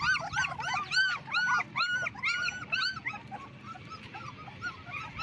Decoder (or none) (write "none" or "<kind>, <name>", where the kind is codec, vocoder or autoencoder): none